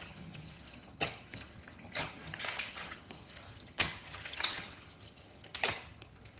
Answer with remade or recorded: remade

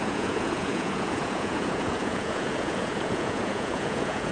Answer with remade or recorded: remade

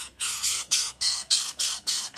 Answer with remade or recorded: remade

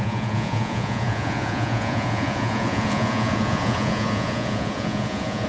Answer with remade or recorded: remade